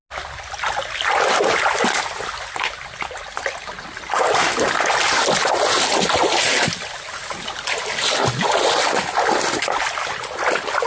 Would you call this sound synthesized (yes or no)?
no